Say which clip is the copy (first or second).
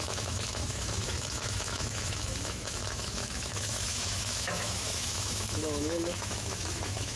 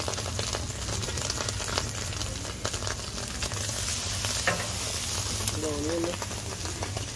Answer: first